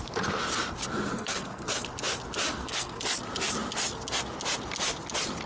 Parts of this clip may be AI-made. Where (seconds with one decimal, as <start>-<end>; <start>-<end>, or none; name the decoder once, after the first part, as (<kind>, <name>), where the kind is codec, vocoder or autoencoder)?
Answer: 1.1-1.7 (codec, SNAC); 2.5-3.0